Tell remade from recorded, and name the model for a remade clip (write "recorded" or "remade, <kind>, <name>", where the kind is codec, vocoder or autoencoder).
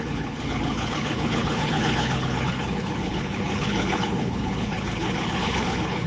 remade, codec, HILCodec